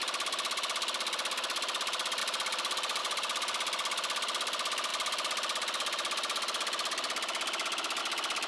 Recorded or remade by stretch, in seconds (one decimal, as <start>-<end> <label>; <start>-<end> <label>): 0.0-2.2 recorded; 2.2-3.0 remade; 3.0-8.5 recorded